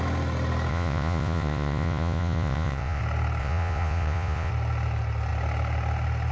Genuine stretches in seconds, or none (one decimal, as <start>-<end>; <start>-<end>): 0.0-0.7; 3.0-3.4; 4.5-6.3